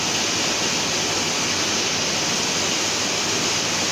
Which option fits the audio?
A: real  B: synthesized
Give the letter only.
A